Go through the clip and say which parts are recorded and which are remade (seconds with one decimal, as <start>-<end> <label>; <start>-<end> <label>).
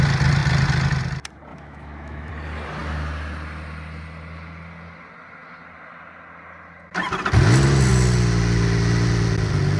0.0-1.5 recorded; 1.5-2.3 remade; 2.3-9.8 recorded